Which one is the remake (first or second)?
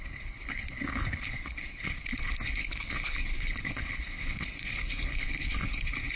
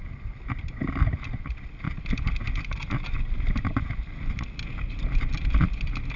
first